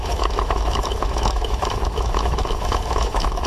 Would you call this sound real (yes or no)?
no